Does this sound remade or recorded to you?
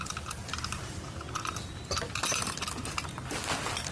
recorded